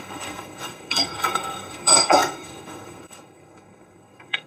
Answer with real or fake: fake